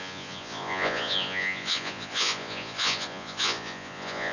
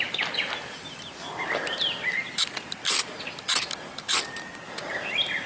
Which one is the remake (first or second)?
first